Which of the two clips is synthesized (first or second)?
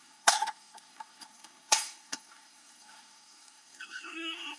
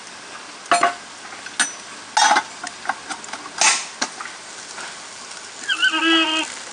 first